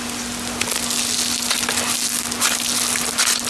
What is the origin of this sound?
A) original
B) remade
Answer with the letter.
A